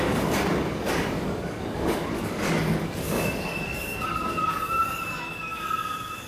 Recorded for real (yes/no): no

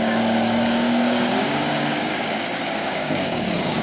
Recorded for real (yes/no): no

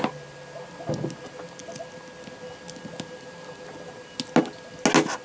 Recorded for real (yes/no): yes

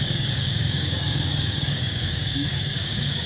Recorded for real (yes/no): no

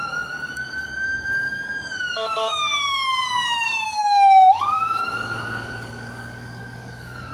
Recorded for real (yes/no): no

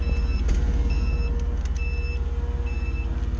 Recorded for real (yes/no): yes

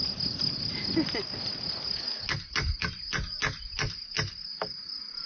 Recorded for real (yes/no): yes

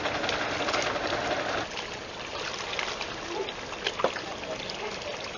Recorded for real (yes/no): yes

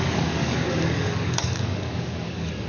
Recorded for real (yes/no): no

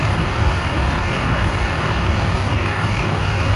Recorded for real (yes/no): no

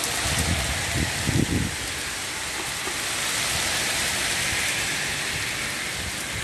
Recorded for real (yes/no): yes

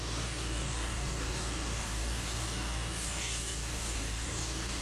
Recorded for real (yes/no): no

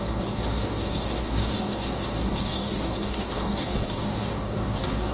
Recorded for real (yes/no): no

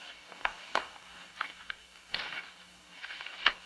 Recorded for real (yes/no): no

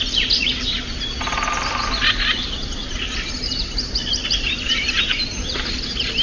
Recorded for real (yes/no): yes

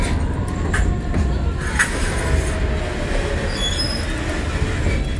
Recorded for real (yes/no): yes